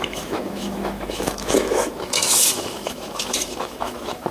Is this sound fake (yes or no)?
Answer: yes